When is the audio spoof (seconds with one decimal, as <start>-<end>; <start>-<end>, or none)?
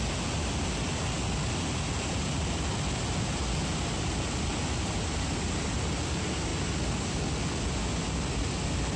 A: none